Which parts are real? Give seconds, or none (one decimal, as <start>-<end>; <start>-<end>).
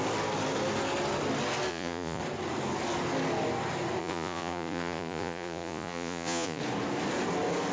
0.0-1.7; 2.2-4.0; 6.6-7.7